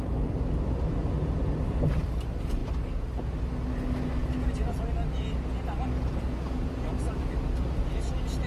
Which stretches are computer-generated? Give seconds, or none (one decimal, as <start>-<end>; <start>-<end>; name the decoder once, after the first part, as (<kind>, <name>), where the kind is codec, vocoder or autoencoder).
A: none